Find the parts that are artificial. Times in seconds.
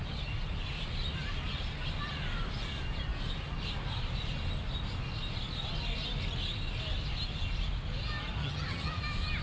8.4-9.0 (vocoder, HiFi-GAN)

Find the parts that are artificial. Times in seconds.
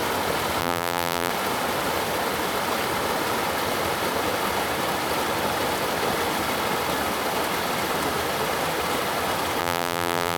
0.6-1.3 (vocoder, BigVGAN v2); 9.6-10.4